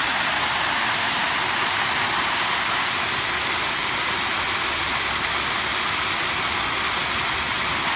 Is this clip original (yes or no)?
yes